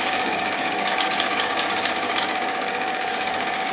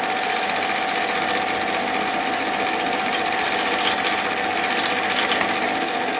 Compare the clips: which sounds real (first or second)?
second